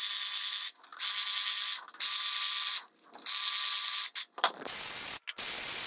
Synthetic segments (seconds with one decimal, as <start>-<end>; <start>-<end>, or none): none